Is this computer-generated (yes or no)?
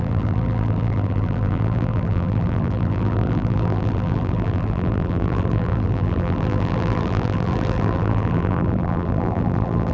yes